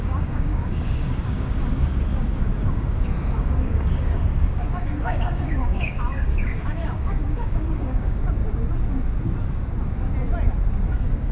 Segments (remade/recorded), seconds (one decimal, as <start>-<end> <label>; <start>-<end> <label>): 0.0-8.4 remade; 8.4-10.7 recorded; 10.7-11.3 remade